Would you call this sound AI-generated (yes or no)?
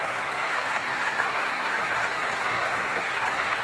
yes